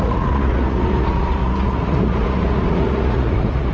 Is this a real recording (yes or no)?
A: no